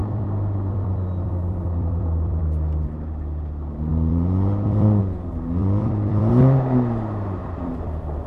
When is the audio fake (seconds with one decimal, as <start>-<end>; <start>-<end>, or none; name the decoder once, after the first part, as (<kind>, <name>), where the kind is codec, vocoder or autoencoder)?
0.0-2.4 (vocoder, BigVGAN v2); 3.9-5.0; 5.6-6.3; 7.4-8.3